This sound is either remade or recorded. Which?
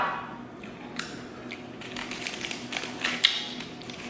recorded